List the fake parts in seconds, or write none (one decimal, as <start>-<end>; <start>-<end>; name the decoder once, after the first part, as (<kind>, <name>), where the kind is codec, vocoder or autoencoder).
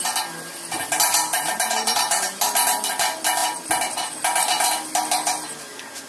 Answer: 1.3-2.4 (vocoder, BigVGAN v2)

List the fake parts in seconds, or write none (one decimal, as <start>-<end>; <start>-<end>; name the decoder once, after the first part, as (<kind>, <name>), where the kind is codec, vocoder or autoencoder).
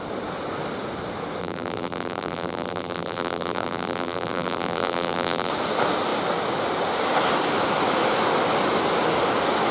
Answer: 1.4-5.5 (vocoder, BigVGAN v2)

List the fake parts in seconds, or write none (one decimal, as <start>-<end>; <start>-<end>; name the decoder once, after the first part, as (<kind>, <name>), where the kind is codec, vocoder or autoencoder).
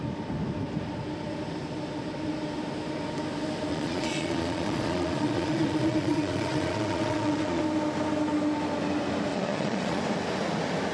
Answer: 3.7-7.6 (vocoder, Vocos); 9.3-10.0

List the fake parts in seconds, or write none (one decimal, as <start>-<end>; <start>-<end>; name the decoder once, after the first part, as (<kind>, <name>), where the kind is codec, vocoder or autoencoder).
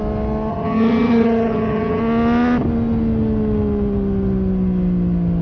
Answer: 0.5-2.0 (vocoder, HiFi-GAN)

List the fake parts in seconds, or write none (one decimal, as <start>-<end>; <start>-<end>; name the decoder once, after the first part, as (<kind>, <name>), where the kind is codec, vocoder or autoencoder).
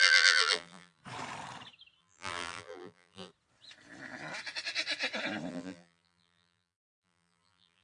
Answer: 0.0-1.0 (vocoder, BigVGAN v2); 2.0-3.3; 5.5-7.8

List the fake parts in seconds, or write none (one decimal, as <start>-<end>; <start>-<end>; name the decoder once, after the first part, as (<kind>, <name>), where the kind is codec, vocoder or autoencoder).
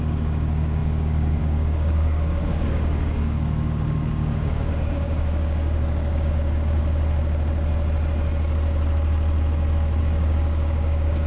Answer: 0.0-6.8 (codec, DAC); 10.0-11.3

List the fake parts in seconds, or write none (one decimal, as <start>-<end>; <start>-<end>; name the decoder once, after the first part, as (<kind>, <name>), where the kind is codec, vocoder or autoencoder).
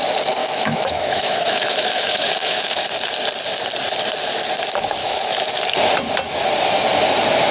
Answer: 0.4-2.8 (autoencoder, DAC-VAE); 5.0-5.5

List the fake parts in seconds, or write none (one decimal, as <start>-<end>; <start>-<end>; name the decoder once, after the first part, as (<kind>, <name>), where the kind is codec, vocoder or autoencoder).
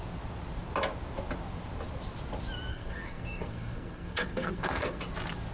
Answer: 2.7-5.0 (codec, SNAC)